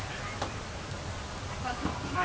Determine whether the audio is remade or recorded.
recorded